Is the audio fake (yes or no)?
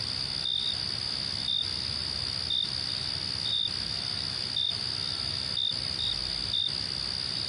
no